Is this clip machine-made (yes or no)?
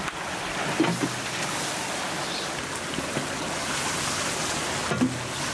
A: no